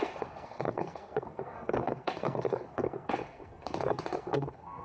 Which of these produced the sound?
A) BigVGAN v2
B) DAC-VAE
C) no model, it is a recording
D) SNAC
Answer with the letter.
D